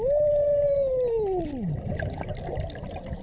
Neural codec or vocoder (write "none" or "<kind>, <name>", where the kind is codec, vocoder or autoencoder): none